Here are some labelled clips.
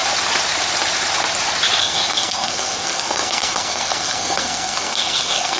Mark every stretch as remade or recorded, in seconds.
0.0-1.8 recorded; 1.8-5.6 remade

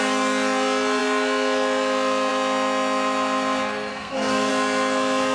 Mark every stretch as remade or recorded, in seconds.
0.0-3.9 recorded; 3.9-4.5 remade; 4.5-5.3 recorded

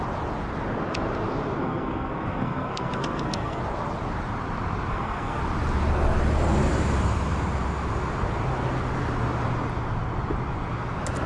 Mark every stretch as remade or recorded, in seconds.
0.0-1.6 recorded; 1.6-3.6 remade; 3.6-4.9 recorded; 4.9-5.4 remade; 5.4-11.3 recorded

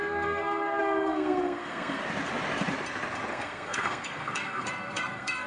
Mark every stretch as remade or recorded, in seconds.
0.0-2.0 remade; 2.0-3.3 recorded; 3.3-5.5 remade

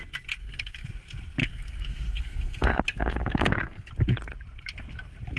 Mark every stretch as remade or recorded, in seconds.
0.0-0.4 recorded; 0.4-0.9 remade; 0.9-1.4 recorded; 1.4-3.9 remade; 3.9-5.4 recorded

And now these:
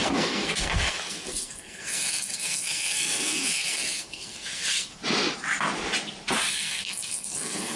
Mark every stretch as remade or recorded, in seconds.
0.0-5.0 remade; 5.0-6.5 recorded; 6.5-7.8 remade

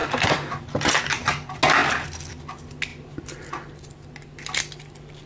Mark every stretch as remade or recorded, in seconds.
0.0-5.3 recorded

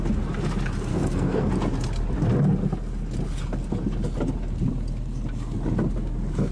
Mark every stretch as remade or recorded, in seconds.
0.0-0.9 recorded; 0.9-1.5 remade; 1.5-6.5 recorded